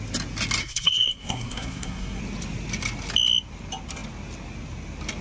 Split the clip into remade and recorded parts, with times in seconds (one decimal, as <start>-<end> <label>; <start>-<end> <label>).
0.0-0.6 recorded; 0.6-2.2 remade; 2.2-5.2 recorded